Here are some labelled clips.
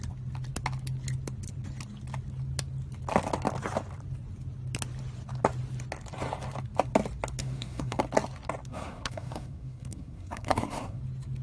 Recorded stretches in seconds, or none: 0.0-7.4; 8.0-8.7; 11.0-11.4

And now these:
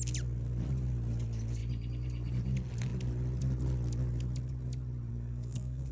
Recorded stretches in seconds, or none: 0.0-5.1

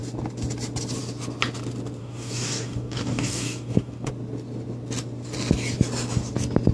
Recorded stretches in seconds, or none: 0.0-2.0; 4.1-6.7

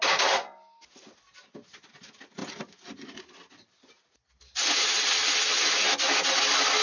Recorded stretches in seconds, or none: 0.0-6.8